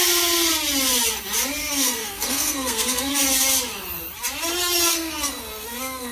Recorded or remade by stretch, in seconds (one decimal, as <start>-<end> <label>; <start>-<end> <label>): 0.0-1.6 recorded; 1.6-3.1 remade; 3.1-4.9 recorded; 4.9-6.1 remade